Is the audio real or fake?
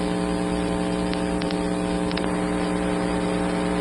fake